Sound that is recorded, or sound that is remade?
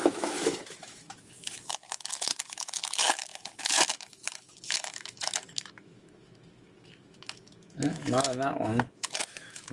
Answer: remade